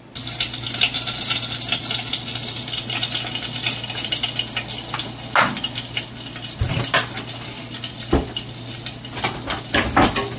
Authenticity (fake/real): real